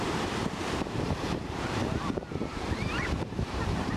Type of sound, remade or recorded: remade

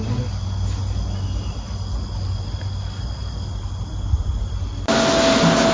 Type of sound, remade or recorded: recorded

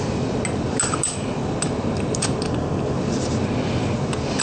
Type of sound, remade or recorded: recorded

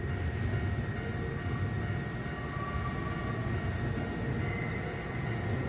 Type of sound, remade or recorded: recorded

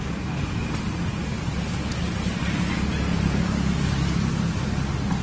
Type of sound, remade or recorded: recorded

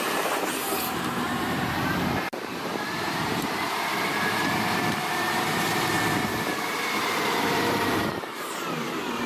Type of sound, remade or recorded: remade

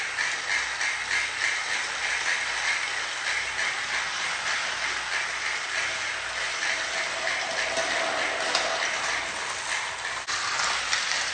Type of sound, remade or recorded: recorded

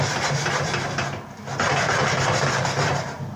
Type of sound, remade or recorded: recorded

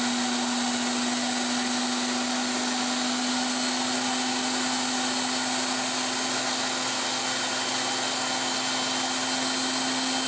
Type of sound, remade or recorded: recorded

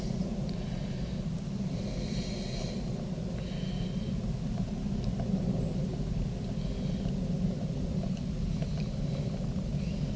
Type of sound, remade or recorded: recorded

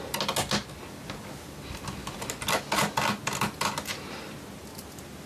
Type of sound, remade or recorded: recorded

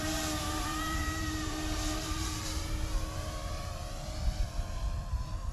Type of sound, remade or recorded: remade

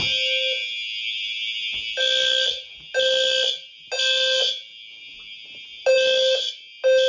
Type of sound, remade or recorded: recorded